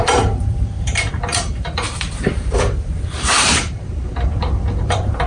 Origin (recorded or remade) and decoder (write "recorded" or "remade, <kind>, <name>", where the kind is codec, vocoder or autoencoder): remade, vocoder, BigVGAN v2